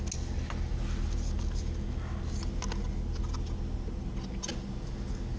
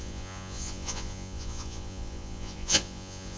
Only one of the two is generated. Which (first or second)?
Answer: second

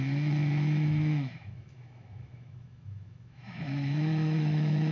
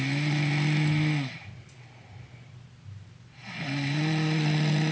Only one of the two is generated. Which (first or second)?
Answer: first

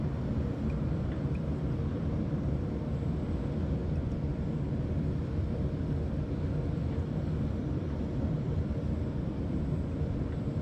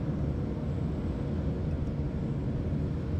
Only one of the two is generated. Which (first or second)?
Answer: first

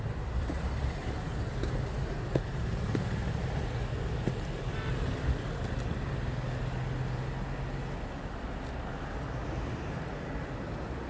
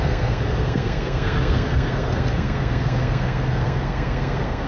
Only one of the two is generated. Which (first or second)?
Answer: second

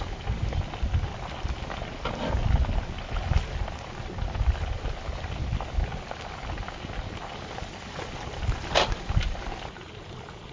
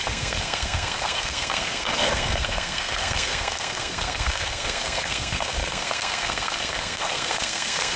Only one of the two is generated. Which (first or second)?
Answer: second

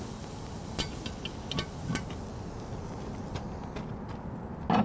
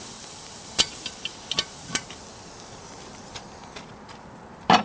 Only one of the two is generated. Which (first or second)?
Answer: second